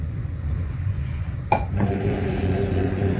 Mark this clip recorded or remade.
remade